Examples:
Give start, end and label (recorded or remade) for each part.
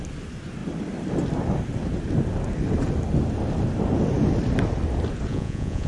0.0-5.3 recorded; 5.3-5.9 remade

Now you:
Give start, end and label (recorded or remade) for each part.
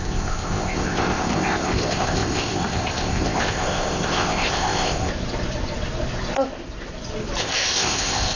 0.0-5.1 remade; 5.1-7.4 recorded; 7.4-8.4 remade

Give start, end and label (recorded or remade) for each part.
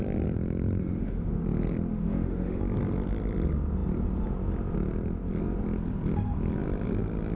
0.0-0.8 recorded; 0.8-1.4 remade; 1.4-1.9 recorded; 1.9-2.6 remade; 2.6-7.4 recorded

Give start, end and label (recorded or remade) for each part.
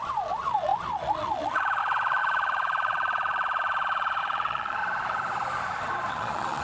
0.0-4.8 remade; 4.8-6.1 recorded; 6.1-6.6 remade